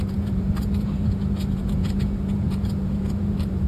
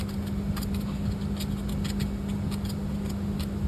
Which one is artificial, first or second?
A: first